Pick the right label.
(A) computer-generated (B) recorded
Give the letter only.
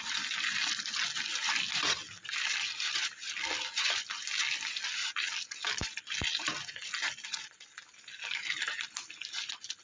B